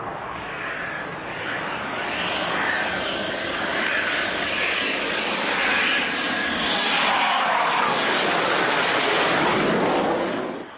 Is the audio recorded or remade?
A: remade